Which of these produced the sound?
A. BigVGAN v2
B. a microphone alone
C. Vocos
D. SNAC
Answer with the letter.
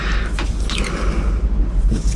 B